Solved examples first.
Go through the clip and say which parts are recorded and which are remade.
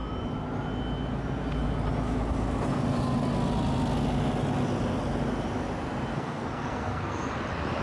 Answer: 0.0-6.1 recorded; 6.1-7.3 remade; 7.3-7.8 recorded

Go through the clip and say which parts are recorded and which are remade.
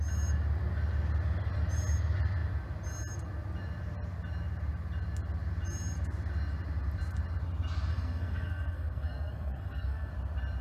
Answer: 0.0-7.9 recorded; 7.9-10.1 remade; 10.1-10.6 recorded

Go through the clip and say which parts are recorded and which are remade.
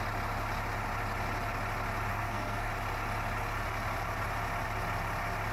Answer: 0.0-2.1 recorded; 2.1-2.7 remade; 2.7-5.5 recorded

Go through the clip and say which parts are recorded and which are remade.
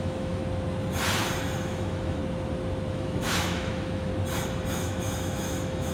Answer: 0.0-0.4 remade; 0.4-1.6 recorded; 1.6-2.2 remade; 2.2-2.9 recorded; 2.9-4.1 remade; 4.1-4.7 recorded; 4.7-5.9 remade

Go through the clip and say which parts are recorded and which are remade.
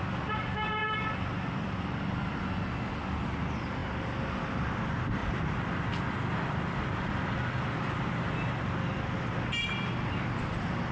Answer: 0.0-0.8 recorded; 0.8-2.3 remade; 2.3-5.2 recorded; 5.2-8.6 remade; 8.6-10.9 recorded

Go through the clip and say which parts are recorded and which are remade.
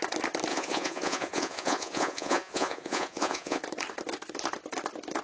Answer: 0.0-0.5 recorded; 0.5-3.6 remade; 3.6-5.2 recorded